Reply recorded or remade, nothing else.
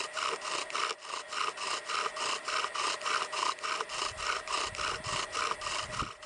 recorded